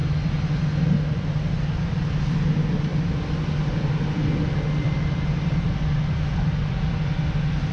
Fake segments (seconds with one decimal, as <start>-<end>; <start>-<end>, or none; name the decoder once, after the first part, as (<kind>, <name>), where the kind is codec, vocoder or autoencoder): none